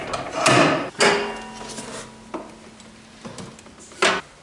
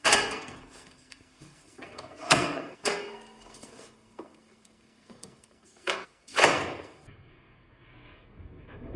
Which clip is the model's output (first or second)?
second